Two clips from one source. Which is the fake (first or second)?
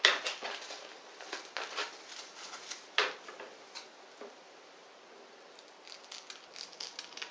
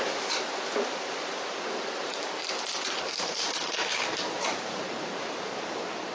second